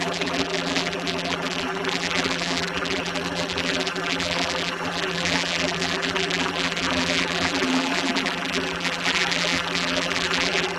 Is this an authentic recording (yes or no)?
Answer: no